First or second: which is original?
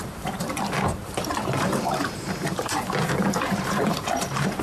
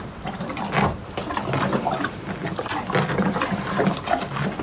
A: second